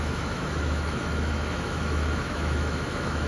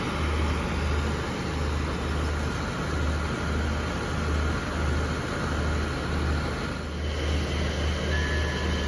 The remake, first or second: first